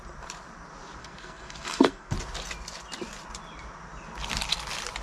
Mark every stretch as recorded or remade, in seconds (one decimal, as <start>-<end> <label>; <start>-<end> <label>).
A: 0.0-1.0 recorded; 1.0-2.1 remade; 2.1-5.0 recorded